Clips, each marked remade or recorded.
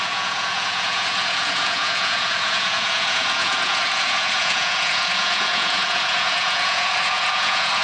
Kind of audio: remade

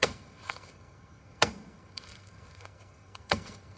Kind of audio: remade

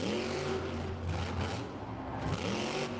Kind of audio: recorded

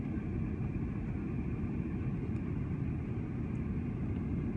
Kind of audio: recorded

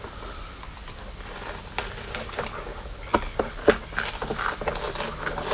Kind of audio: recorded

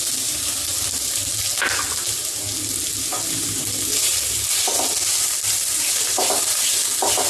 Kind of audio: recorded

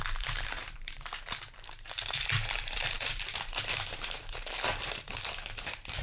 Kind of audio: remade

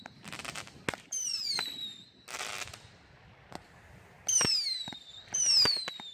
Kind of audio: recorded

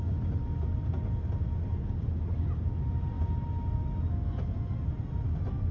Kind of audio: recorded